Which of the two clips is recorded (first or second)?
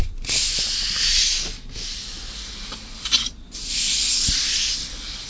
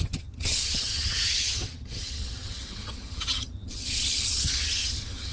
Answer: first